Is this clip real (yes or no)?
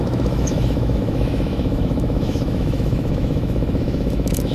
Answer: no